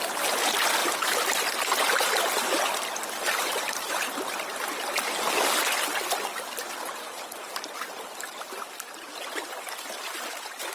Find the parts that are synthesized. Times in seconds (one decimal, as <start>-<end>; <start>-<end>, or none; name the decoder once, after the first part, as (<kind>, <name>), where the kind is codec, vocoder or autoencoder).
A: 0.0-10.7 (vocoder, BigVGAN v2)